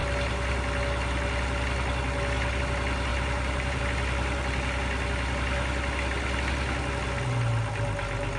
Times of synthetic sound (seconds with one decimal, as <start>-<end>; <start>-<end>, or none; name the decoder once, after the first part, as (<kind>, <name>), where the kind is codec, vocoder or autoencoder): 3.1-3.8 (vocoder, BigVGAN v2)